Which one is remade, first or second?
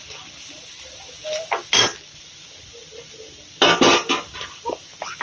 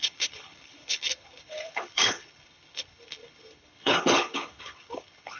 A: second